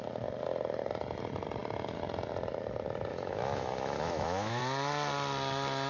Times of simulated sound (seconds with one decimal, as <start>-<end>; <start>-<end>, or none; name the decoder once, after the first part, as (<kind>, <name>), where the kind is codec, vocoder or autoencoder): 3.1-4.6 (autoencoder, DAC-VAE)